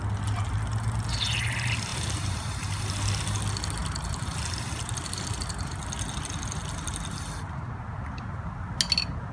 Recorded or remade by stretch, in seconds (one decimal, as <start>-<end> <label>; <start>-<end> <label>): 0.0-1.9 recorded; 1.9-2.5 remade; 2.5-3.8 recorded; 3.8-5.8 remade; 5.8-9.3 recorded